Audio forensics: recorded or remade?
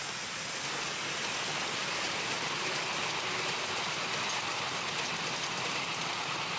recorded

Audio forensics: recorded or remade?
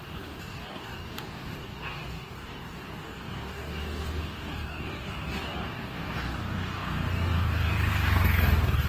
remade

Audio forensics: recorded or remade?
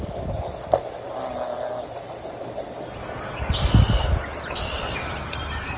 recorded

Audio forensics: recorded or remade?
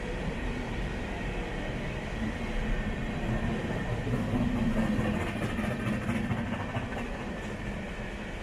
recorded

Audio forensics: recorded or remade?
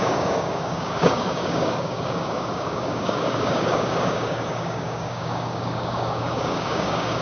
remade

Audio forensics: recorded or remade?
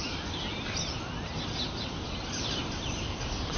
recorded